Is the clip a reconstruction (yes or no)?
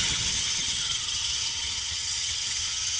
yes